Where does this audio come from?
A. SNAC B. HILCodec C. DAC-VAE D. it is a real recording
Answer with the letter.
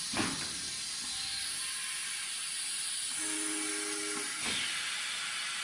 D